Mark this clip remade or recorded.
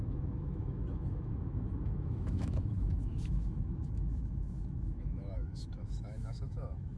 remade